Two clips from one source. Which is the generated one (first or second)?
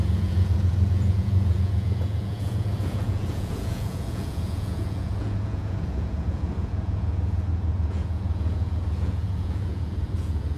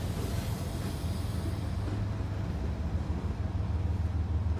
first